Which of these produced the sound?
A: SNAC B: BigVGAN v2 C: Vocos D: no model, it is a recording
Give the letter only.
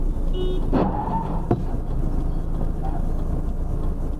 D